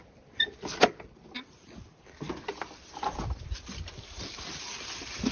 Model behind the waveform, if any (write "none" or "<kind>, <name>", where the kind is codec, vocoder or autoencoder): none